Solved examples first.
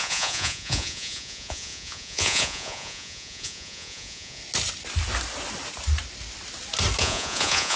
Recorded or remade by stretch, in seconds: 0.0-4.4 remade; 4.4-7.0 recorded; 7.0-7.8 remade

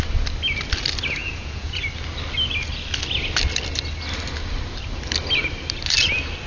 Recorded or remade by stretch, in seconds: 0.0-1.2 recorded; 1.2-1.8 remade; 1.8-6.5 recorded

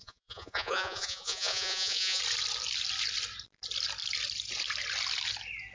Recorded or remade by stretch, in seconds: 0.0-2.2 remade; 2.2-5.7 recorded

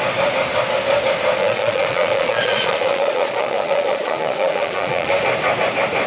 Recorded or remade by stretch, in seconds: 0.0-1.4 recorded; 1.4-5.1 remade; 5.1-6.1 recorded